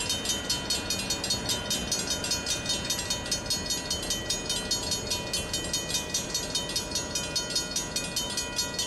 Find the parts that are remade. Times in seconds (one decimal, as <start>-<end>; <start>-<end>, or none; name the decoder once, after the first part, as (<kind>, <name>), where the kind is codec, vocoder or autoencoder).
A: none